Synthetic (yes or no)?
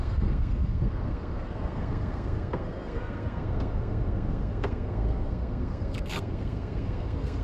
yes